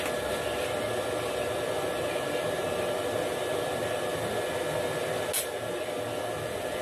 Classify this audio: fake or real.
real